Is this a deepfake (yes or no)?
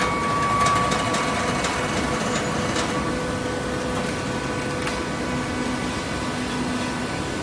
no